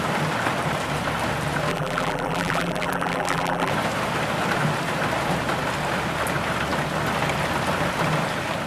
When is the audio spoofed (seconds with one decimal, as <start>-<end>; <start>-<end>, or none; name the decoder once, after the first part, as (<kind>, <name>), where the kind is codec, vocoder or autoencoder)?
1.7-3.7 (vocoder, BigVGAN v2)